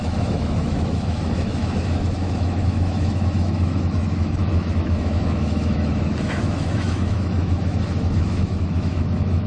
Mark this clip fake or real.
fake